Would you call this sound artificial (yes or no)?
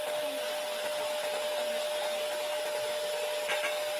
no